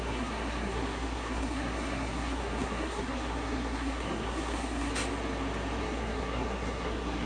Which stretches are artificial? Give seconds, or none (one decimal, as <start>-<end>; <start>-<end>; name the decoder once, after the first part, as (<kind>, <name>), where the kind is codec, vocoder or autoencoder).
0.0-4.9 (codec, SNAC); 5.8-7.3